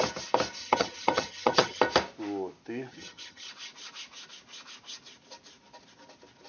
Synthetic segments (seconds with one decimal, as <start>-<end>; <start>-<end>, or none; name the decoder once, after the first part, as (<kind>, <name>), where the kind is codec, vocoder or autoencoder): 0.6-1.8 (vocoder, HiFi-GAN); 2.9-3.5